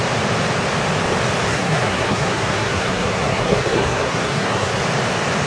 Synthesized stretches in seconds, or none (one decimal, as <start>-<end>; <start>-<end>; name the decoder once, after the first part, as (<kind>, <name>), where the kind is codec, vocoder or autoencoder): 1.5-4.8 (codec, SNAC)